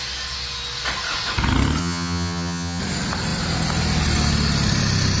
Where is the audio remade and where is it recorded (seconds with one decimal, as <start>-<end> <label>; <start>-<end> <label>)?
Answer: 0.0-1.8 recorded; 1.8-2.8 remade; 2.8-5.2 recorded